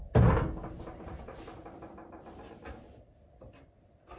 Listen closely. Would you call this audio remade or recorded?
recorded